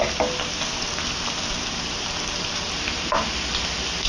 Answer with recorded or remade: recorded